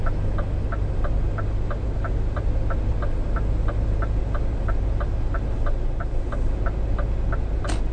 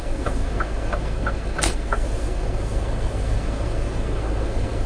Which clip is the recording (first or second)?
first